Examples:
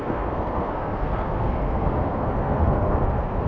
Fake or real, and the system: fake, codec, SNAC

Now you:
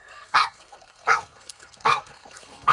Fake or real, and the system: fake, codec, SNAC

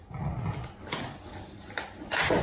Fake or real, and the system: real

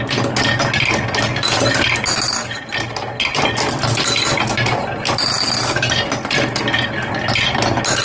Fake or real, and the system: real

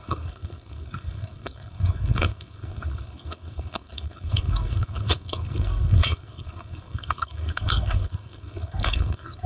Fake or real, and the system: fake, codec, SNAC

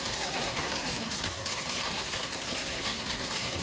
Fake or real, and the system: fake, codec, SNAC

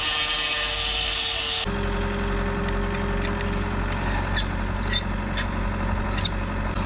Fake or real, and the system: real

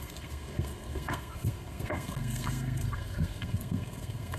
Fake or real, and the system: fake, codec, SNAC